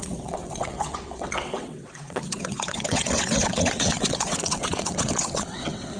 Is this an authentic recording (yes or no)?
no